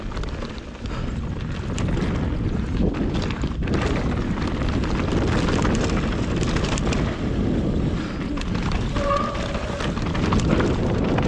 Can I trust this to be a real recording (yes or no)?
yes